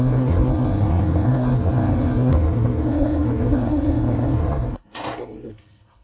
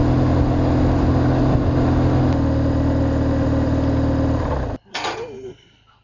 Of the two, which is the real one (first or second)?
second